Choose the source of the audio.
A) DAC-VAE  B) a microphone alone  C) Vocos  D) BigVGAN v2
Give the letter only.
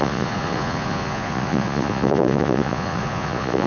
C